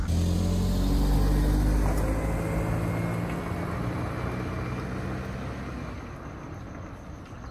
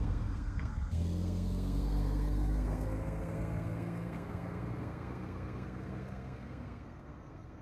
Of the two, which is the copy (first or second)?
second